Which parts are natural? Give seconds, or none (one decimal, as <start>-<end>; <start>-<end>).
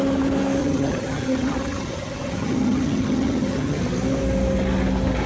0.0-0.6; 3.8-5.3